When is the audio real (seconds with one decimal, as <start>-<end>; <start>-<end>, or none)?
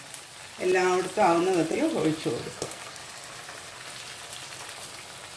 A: 0.0-2.4; 3.0-5.4